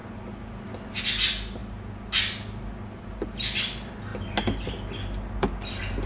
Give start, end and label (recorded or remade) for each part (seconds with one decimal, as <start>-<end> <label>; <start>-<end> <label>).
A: 0.0-6.1 recorded